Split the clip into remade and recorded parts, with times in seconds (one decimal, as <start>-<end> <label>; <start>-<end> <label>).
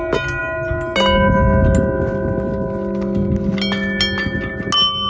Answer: 0.0-5.1 recorded